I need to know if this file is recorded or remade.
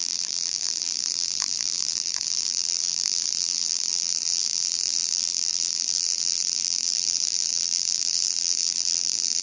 remade